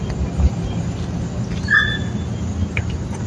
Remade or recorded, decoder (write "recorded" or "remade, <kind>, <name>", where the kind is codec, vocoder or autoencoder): recorded